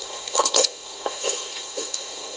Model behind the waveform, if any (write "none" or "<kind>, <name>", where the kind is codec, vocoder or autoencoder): codec, SNAC